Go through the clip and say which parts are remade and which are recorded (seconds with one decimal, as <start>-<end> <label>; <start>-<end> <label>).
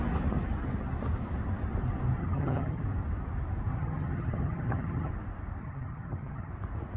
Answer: 0.0-2.2 recorded; 2.2-2.8 remade; 2.8-3.7 recorded; 3.7-5.1 remade; 5.1-5.6 recorded; 5.6-6.5 remade; 6.5-7.0 recorded